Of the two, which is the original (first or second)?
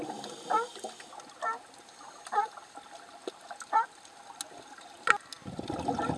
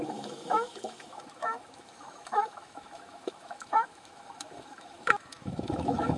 first